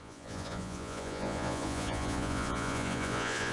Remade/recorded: remade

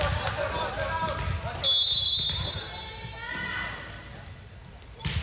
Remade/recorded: recorded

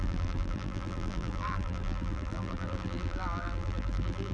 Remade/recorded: remade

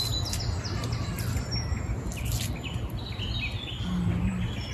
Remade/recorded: recorded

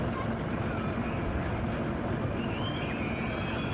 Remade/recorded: recorded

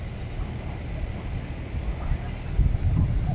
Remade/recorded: recorded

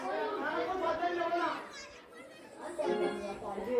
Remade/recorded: recorded